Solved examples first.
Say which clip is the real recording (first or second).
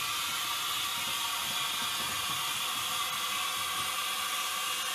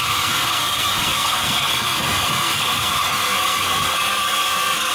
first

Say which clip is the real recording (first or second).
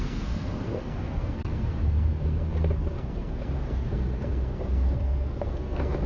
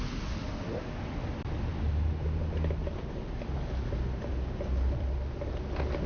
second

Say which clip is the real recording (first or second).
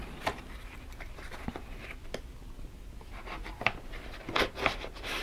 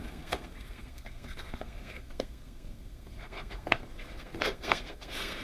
first